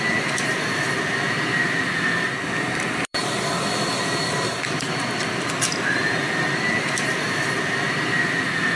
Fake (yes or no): yes